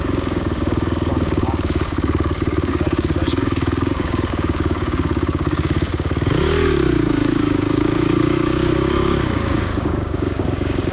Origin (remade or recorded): remade